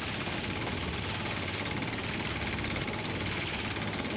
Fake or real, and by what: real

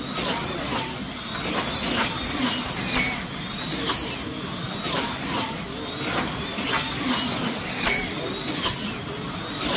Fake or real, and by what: real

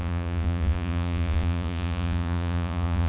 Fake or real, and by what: fake, vocoder, Vocos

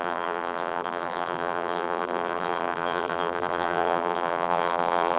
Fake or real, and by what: fake, vocoder, BigVGAN v2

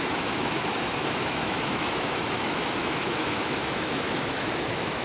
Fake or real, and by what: fake, autoencoder, DAC-VAE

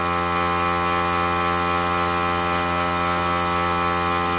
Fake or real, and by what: real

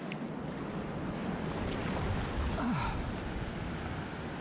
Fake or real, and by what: real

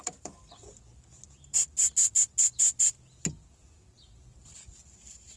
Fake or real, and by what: real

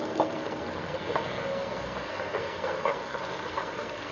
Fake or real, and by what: fake, codec, SNAC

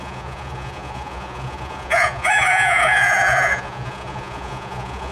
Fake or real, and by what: fake, vocoder, Vocos